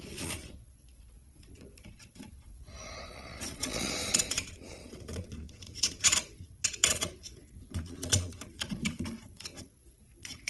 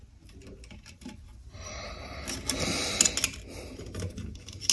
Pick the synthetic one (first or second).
first